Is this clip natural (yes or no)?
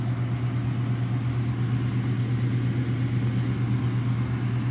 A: yes